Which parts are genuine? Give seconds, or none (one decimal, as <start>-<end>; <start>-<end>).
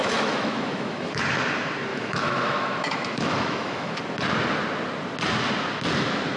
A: 1.2-1.9; 4.0-6.4